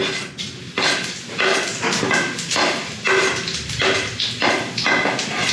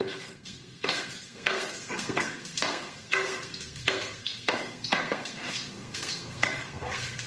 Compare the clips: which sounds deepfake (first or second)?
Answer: second